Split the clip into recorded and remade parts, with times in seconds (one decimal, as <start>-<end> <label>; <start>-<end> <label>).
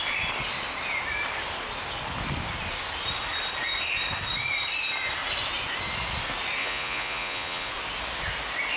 0.0-6.6 recorded; 6.6-7.7 remade; 7.7-8.8 recorded